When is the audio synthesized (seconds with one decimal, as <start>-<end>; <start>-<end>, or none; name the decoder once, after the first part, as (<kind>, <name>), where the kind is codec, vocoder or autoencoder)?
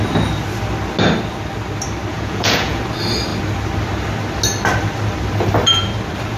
2.1-2.8 (vocoder, Vocos)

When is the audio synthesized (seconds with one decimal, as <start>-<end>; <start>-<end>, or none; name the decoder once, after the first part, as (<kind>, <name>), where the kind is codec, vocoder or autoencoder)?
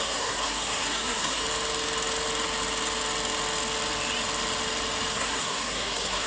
0.0-1.4 (codec, SNAC); 5.1-6.3